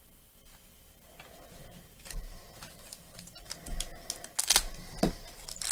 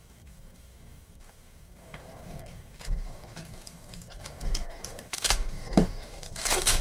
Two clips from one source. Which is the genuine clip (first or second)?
first